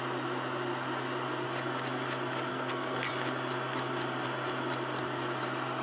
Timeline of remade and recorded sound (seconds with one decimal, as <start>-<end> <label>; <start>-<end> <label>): 0.0-2.5 recorded; 2.5-3.1 remade; 3.1-5.8 recorded